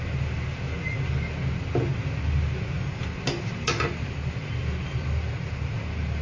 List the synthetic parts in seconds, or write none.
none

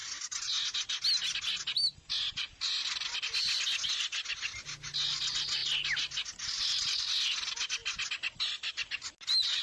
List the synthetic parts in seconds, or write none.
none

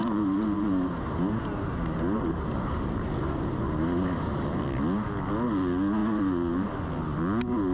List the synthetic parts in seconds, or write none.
0.0-4.6 (vocoder, BigVGAN v2); 6.0-6.8